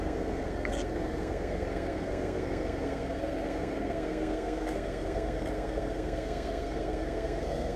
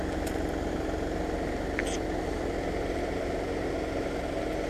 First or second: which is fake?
first